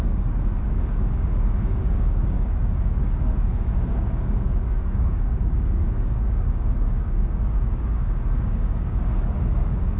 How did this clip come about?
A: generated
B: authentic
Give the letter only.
A